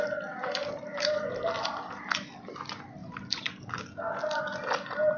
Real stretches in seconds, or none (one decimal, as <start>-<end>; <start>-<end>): 0.0-0.6; 1.9-3.0; 3.8-5.2